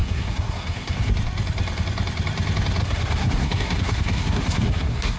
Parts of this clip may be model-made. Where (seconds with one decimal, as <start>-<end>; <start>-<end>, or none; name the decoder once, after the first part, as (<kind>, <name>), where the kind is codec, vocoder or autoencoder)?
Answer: 0.0-1.1 (codec, SNAC); 2.8-5.2